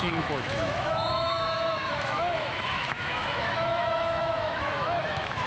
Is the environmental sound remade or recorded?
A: remade